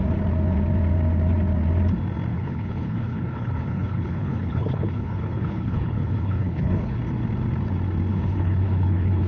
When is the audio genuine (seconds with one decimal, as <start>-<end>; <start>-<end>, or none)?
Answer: 0.0-2.3; 7.0-8.1